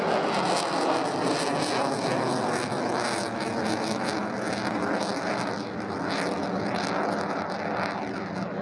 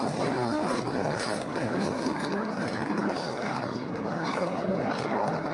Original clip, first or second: first